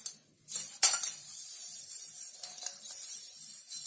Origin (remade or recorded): remade